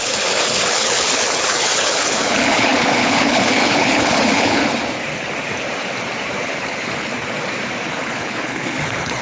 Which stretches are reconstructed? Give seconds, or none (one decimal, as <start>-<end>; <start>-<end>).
0.0-4.6; 6.4-7.1; 7.9-9.2